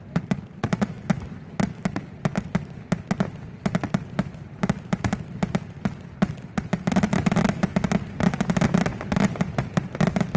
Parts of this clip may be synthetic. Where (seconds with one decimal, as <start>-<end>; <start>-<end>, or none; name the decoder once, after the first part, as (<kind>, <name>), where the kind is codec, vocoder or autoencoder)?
none